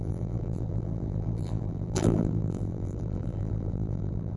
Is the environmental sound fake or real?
fake